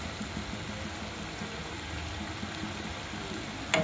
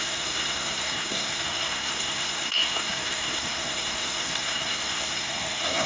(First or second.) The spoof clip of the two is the second